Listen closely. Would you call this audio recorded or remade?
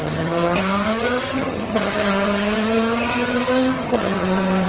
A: remade